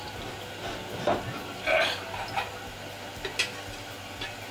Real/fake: real